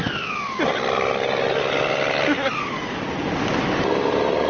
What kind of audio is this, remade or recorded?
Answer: recorded